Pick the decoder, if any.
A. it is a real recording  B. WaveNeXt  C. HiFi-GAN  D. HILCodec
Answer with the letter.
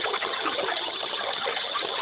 C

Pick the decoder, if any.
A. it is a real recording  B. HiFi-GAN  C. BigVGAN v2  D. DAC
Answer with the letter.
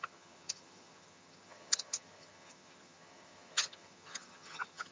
B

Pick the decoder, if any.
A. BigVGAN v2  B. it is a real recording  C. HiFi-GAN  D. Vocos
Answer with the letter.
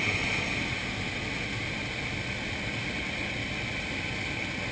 B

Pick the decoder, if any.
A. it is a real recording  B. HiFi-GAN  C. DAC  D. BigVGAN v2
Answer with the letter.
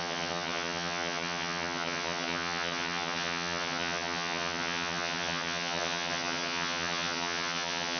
B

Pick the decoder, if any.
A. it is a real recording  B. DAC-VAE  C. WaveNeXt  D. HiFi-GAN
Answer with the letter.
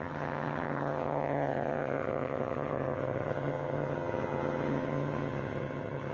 D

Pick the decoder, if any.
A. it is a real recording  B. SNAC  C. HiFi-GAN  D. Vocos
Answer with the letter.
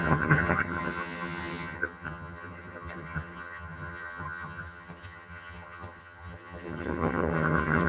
C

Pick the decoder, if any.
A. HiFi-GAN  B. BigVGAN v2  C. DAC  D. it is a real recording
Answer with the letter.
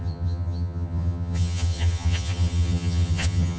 A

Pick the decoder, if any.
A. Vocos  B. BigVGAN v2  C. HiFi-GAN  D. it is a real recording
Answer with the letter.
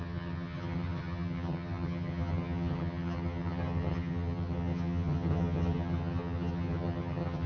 C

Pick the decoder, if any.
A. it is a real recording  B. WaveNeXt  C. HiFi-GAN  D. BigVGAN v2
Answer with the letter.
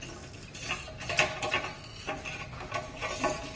A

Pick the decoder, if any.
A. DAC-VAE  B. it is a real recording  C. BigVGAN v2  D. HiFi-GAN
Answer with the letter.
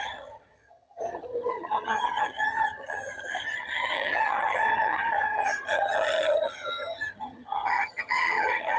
D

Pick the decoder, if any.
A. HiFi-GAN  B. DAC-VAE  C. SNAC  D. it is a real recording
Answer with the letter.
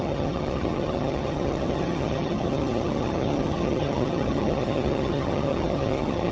A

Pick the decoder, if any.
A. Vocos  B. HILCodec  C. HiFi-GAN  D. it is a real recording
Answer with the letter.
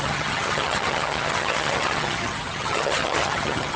C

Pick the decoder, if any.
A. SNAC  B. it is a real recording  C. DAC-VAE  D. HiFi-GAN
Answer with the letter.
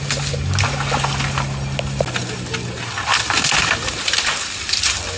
B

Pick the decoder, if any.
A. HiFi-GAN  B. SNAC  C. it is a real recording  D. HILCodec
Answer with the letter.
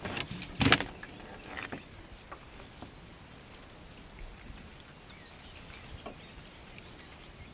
C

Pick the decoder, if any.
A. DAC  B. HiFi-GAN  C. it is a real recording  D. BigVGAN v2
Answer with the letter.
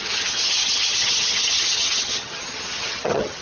B